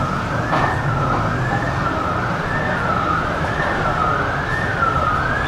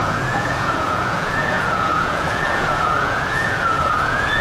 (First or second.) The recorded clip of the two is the first